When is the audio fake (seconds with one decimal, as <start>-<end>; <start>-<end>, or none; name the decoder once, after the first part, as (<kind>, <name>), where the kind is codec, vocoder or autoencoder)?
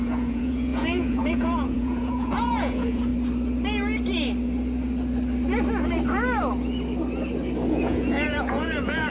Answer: 0.0-3.1 (vocoder, Vocos); 7.7-9.1